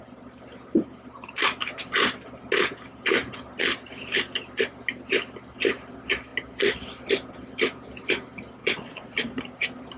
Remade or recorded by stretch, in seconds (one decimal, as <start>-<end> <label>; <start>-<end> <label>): 0.0-8.6 recorded; 8.6-9.4 remade; 9.4-10.0 recorded